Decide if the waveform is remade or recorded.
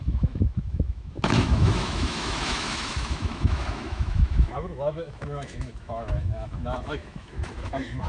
remade